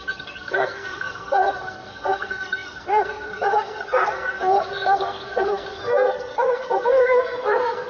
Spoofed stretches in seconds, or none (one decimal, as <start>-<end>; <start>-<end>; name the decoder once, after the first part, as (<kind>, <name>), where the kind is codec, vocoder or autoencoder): 0.0-7.9 (codec, SNAC)